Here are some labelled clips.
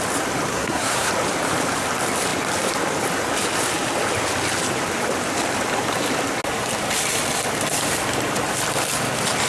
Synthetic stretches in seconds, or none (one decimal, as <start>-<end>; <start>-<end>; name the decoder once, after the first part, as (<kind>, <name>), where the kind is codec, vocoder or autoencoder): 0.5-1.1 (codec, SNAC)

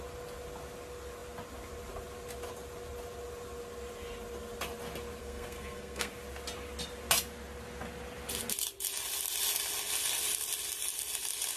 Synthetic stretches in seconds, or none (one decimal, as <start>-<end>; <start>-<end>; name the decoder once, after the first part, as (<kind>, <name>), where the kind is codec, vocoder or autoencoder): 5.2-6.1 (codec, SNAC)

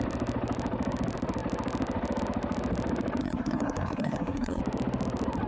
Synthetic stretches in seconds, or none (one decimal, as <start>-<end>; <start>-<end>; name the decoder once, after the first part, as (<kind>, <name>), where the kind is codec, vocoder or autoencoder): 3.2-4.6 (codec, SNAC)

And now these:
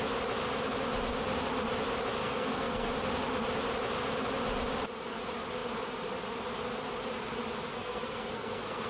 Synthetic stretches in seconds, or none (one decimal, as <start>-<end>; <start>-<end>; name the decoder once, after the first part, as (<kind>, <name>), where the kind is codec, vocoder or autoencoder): 2.2-2.9 (codec, SNAC); 7.7-8.9